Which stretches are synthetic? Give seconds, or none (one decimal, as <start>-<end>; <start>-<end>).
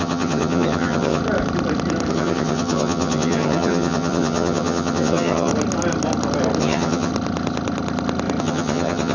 0.0-1.2; 2.1-5.5; 6.6-7.1; 8.4-9.1